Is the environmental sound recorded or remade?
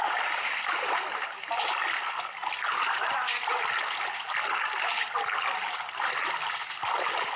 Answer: recorded